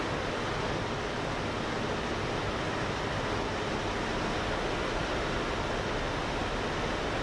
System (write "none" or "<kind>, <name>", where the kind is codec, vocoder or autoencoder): none